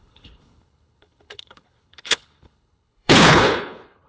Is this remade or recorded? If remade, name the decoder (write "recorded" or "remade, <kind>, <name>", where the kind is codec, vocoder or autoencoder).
remade, codec, HILCodec